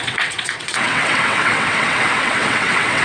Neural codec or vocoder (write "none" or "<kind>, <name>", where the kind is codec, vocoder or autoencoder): vocoder, WaveNeXt